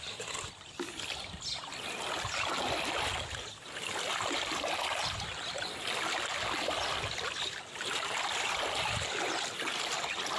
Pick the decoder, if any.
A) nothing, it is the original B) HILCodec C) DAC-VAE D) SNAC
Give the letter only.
A